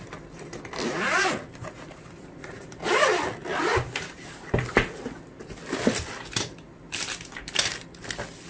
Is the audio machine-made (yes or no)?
no